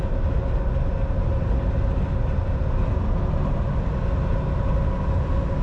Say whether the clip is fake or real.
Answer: real